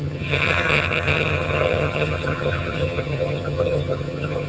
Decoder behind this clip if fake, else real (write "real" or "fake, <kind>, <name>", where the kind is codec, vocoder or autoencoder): fake, vocoder, HiFi-GAN